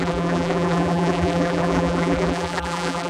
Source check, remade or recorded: remade